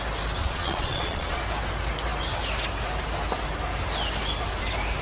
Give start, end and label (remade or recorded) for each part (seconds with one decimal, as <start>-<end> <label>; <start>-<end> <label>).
0.0-0.4 recorded; 0.4-1.4 remade; 1.4-5.0 recorded